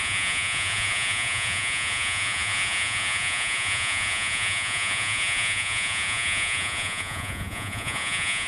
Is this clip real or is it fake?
fake